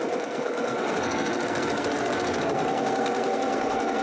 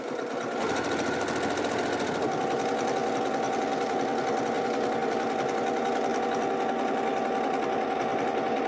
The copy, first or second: first